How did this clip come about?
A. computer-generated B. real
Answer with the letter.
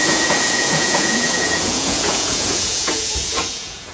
A